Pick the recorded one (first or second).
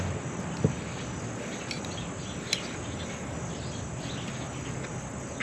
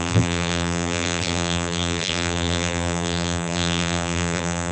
first